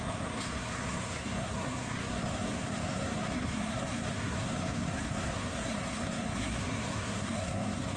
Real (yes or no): no